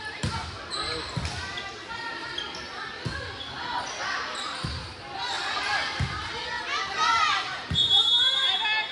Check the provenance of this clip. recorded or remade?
recorded